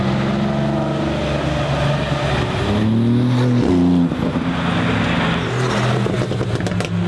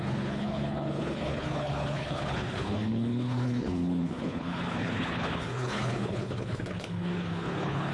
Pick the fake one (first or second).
second